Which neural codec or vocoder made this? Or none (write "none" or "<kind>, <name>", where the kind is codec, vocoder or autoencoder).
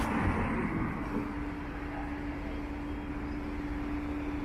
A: none